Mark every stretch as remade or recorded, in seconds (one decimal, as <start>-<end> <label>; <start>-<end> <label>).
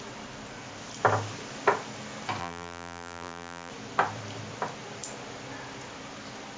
0.0-2.4 recorded; 2.4-3.7 remade; 3.7-6.6 recorded